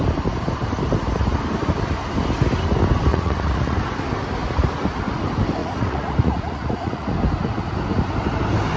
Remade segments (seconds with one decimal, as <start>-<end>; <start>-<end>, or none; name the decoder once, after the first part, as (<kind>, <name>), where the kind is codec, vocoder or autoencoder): 3.1-3.8 (vocoder, Vocos); 5.6-7.1

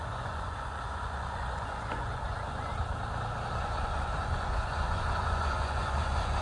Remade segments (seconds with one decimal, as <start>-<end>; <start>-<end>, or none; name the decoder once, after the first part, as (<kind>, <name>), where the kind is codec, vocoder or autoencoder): 0.0-2.7 (vocoder, Vocos); 3.5-6.4

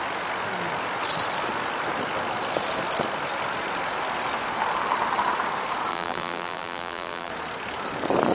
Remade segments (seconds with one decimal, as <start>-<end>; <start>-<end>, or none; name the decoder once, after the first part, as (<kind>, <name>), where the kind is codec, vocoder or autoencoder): 5.9-7.3 (vocoder, BigVGAN v2)

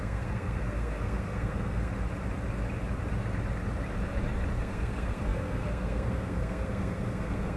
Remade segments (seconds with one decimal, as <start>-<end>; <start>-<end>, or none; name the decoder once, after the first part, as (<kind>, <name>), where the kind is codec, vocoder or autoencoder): 0.0-1.9 (codec, SNAC); 4.6-7.6

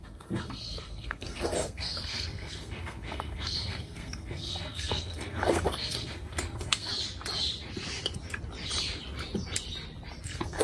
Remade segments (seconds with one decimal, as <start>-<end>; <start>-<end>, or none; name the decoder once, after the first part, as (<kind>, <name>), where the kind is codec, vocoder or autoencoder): 0.0-6.9 (codec, SNAC); 10.2-10.6

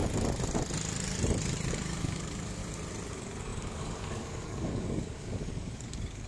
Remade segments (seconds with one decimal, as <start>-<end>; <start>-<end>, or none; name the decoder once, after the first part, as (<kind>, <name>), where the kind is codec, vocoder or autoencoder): 1.7-2.6 (codec, DAC); 3.1-6.3

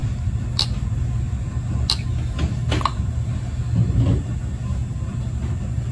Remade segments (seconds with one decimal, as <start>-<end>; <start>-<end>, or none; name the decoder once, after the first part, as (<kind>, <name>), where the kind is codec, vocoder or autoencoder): none